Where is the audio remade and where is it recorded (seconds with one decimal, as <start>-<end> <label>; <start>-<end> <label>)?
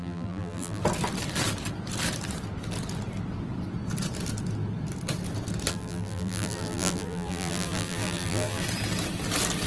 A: 0.0-0.8 remade; 0.8-5.7 recorded; 5.7-8.6 remade; 8.6-9.7 recorded